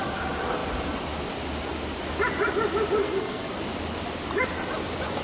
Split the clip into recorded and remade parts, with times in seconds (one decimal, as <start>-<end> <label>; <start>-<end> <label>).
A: 0.0-3.0 recorded; 3.0-3.5 remade; 3.5-5.2 recorded